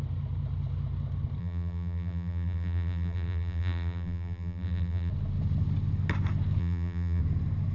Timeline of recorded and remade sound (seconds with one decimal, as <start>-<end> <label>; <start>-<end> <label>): 0.0-1.4 recorded; 1.4-5.1 remade; 5.1-6.6 recorded; 6.6-7.2 remade; 7.2-7.7 recorded